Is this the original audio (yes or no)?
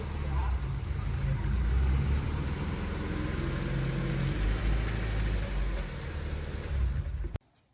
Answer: yes